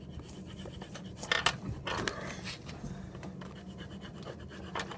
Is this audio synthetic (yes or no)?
no